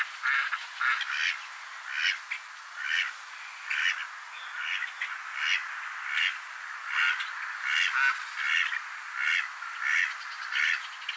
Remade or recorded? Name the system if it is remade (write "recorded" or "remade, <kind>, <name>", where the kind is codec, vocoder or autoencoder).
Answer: recorded